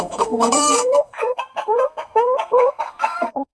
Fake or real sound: fake